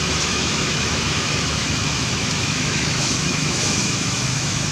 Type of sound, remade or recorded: remade